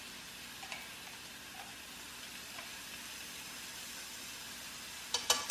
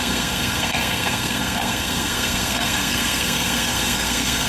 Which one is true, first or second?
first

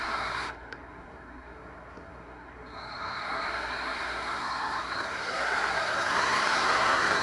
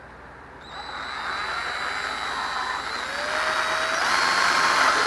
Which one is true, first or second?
second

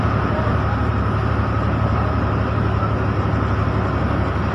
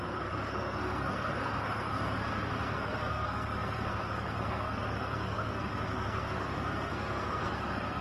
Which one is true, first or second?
first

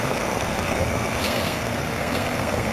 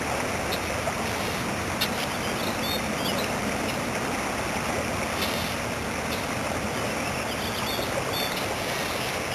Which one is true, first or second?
second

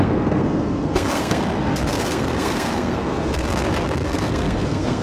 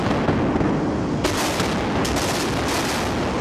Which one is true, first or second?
second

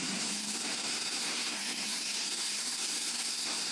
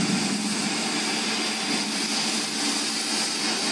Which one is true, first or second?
second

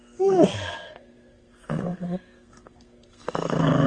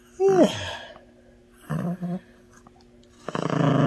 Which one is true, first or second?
second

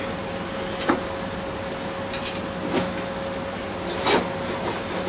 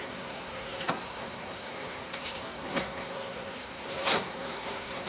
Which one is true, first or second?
first